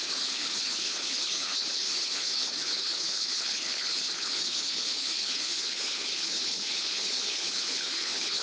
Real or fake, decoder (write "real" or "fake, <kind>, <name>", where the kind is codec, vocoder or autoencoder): fake, codec, HILCodec